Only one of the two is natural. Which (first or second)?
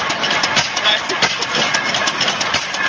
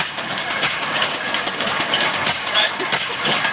first